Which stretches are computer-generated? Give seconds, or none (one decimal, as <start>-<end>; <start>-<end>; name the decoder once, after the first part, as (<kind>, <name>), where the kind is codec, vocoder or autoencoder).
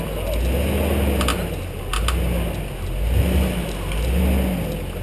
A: none